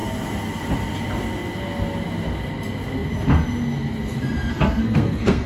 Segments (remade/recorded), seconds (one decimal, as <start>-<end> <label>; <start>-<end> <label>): 0.0-4.5 recorded; 4.5-5.5 remade